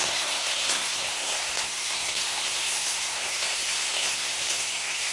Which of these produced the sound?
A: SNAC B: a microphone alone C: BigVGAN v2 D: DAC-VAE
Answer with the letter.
A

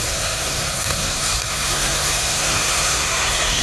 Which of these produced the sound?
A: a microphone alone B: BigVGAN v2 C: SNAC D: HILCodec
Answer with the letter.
C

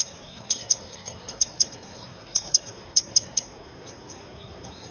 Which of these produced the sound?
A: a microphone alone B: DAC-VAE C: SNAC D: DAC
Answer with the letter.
C